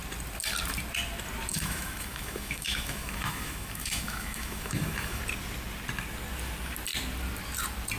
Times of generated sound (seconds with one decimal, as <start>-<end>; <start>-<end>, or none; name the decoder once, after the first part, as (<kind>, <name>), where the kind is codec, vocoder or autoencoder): 1.5-5.2 (autoencoder, DAC-VAE)